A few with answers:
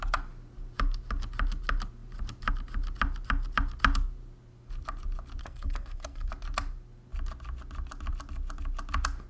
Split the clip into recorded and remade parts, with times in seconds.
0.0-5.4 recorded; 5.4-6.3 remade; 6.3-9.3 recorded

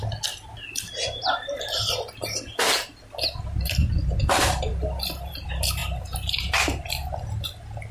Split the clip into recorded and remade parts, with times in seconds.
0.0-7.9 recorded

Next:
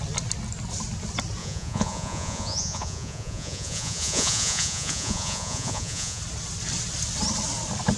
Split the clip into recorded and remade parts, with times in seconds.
0.0-1.4 recorded; 1.4-6.2 remade; 6.2-8.0 recorded

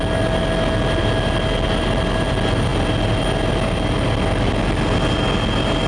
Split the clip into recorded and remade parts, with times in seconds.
0.0-5.9 recorded

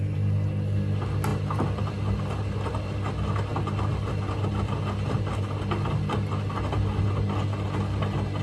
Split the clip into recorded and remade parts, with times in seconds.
0.0-8.4 recorded